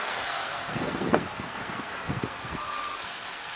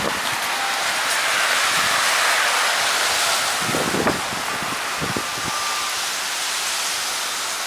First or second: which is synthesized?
first